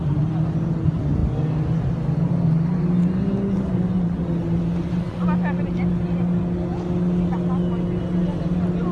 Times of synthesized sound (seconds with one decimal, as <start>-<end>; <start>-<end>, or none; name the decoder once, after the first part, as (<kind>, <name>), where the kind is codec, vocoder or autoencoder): none